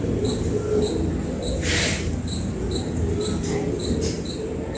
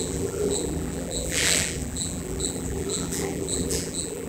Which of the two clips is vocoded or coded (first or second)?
second